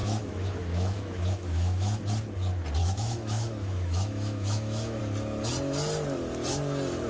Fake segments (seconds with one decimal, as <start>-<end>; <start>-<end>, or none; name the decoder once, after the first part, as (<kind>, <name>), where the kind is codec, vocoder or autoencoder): 0.0-2.0 (autoencoder, DAC-VAE); 2.8-5.0